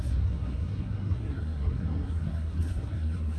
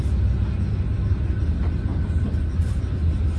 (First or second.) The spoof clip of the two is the first